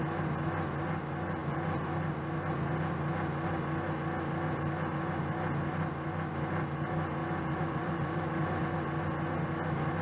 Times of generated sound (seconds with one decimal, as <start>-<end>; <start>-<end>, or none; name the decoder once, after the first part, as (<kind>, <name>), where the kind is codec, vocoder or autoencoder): 7.2-8.6 (vocoder, BigVGAN v2)